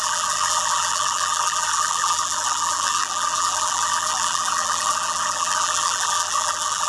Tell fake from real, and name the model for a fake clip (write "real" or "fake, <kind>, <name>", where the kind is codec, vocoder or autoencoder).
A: fake, vocoder, BigVGAN v2